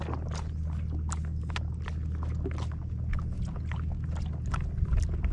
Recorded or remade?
recorded